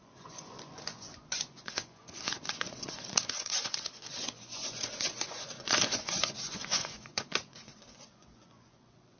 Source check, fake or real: fake